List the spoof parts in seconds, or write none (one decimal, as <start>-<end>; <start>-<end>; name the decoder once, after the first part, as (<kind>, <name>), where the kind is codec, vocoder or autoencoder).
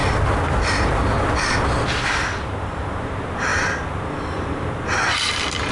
none